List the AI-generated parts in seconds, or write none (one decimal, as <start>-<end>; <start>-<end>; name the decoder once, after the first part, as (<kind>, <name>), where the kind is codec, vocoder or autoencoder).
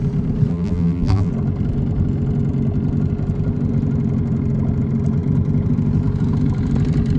0.5-1.3 (vocoder, BigVGAN v2)